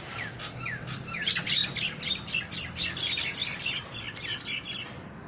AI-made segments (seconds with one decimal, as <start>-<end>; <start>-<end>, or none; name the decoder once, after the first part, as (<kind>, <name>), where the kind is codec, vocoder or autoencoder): none